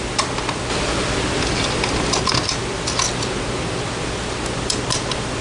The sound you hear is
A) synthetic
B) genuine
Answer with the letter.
B